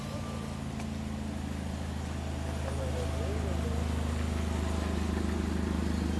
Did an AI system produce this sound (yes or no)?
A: no